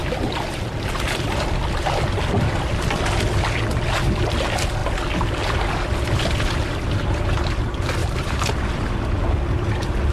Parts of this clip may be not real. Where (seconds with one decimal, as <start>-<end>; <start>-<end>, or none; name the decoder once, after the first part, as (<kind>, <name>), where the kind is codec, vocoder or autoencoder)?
8.0-8.5 (vocoder, BigVGAN v2)